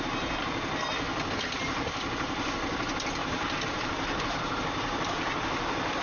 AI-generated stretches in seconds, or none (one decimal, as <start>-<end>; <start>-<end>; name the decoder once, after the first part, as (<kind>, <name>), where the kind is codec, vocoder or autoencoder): 3.2-3.9 (vocoder, BigVGAN v2)